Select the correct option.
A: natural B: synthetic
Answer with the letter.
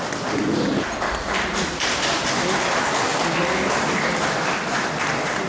B